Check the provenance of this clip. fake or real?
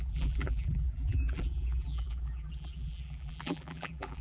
fake